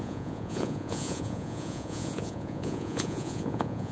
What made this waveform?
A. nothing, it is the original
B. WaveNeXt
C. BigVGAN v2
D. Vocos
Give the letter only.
D